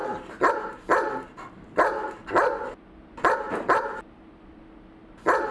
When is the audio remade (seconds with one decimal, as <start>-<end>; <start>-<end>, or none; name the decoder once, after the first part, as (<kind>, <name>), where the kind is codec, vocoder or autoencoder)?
none